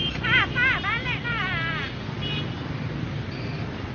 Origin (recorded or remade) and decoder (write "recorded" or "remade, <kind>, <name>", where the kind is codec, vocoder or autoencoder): recorded